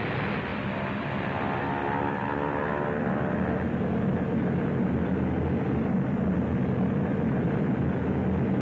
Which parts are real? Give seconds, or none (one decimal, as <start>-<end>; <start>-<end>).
0.0-0.5; 1.6-7.1; 7.7-8.6